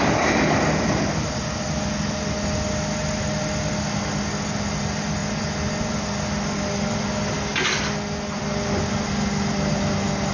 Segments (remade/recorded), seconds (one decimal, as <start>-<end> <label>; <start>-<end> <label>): 0.0-10.3 recorded